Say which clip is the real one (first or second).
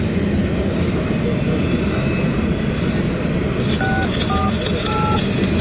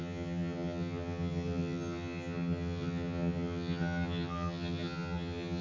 first